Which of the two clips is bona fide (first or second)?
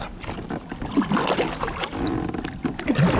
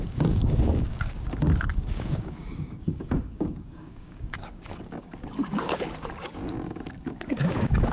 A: first